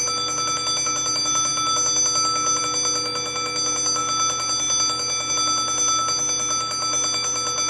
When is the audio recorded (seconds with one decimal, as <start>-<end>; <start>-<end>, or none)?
0.0-7.7